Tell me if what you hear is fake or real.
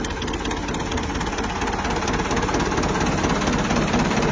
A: real